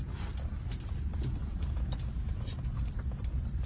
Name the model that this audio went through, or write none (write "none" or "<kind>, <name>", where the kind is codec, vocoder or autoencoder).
none